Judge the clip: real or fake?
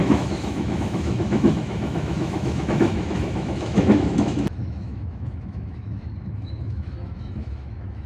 fake